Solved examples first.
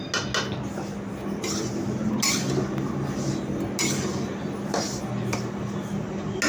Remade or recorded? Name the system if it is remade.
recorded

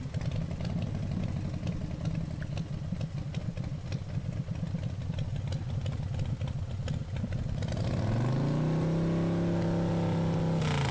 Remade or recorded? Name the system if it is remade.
recorded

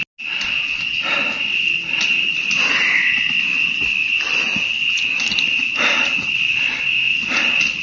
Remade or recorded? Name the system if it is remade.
recorded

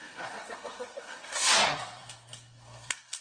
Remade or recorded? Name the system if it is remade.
remade, codec, SNAC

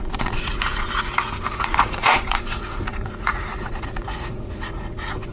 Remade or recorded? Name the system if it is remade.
remade, vocoder, Vocos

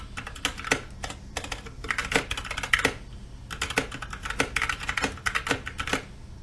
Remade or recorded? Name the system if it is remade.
recorded